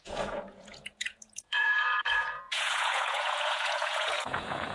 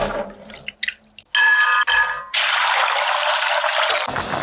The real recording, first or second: second